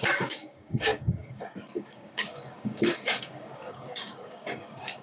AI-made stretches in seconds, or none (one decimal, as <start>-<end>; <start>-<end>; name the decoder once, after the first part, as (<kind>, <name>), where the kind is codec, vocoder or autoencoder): 0.0-5.0 (codec, DAC)